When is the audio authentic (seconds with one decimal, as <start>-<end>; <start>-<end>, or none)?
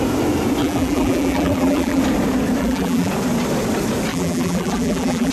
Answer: 0.0-0.6; 2.0-2.6; 3.1-4.1